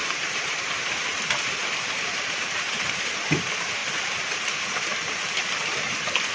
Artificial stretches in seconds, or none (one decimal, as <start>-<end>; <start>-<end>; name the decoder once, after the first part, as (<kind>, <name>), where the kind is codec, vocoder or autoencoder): 0.0-3.4 (vocoder, BigVGAN v2)